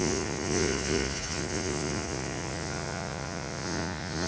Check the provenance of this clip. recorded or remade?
remade